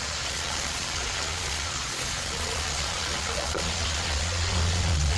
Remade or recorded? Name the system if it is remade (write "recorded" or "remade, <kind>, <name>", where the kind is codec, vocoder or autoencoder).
remade, vocoder, Vocos